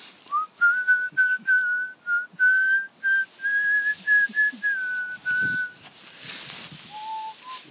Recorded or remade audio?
recorded